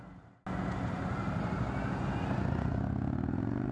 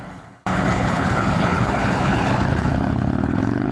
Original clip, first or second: first